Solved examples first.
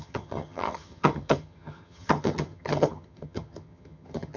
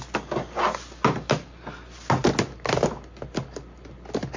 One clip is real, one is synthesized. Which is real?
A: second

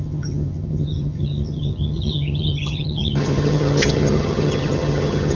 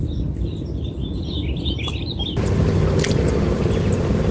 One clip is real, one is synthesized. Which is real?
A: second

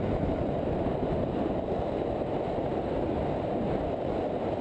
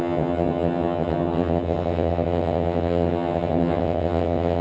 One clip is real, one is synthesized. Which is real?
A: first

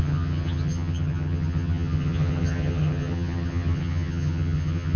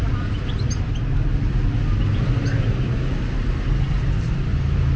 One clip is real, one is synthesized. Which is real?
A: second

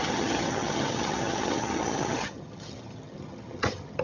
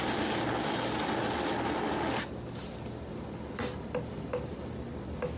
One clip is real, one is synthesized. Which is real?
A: second